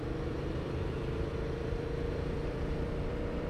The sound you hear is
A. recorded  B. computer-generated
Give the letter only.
B